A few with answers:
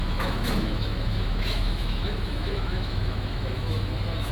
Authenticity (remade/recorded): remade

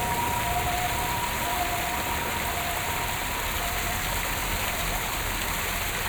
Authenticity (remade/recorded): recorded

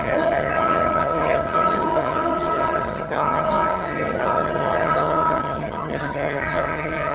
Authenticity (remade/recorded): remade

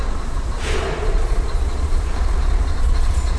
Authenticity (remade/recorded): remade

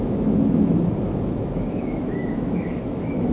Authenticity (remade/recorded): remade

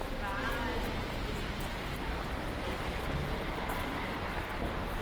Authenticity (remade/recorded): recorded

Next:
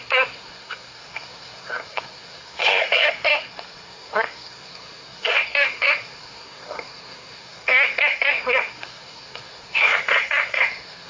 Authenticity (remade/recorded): remade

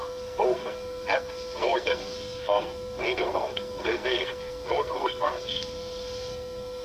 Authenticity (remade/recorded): remade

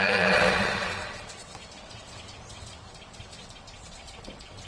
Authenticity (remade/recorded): remade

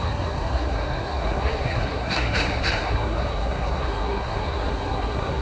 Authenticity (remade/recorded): remade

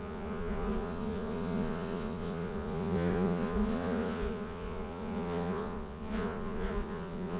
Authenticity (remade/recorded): remade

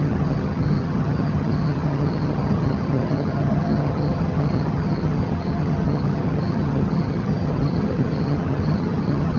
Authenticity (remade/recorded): remade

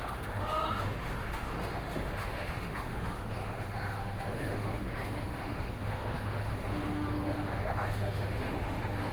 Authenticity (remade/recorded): remade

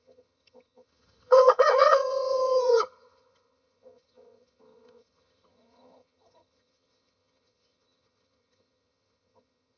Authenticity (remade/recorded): remade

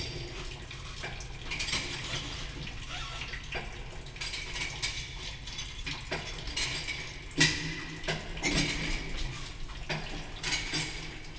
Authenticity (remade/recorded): recorded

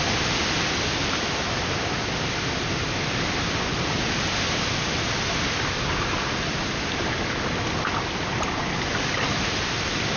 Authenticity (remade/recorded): recorded